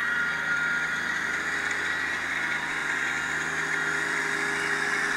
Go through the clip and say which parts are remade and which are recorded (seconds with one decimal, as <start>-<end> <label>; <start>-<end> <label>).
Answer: 0.0-2.1 remade; 2.1-2.8 recorded; 2.8-4.2 remade; 4.2-5.2 recorded